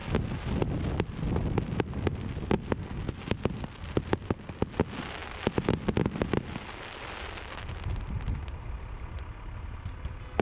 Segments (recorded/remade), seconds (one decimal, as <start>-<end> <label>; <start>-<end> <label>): 0.0-10.4 recorded